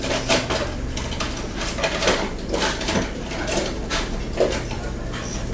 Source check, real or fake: real